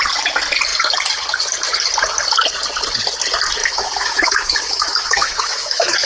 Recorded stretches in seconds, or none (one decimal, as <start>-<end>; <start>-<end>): 0.0-3.6